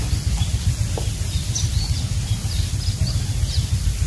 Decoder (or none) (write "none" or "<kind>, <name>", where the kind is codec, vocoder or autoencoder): none